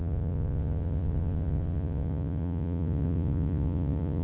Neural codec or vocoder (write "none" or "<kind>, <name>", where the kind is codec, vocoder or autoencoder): vocoder, Vocos